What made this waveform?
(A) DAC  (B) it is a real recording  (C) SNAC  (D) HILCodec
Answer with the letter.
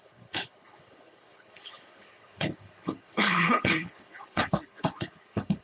D